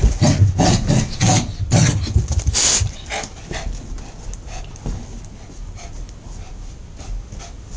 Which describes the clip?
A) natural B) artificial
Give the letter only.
A